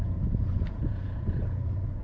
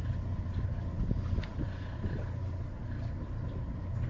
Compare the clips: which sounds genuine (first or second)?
second